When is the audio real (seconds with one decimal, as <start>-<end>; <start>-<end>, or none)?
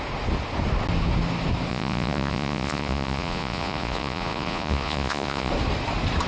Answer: 0.0-1.7; 5.5-6.3